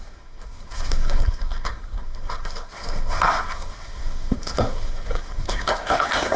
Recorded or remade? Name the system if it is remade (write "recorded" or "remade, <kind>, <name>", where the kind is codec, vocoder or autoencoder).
remade, codec, SNAC